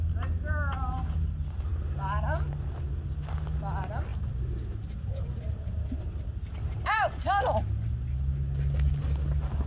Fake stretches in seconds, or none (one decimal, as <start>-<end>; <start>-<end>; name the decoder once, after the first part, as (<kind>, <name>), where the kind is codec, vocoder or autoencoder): none